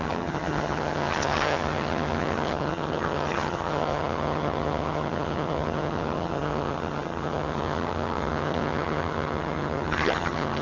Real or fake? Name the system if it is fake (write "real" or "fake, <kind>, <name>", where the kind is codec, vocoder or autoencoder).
fake, vocoder, HiFi-GAN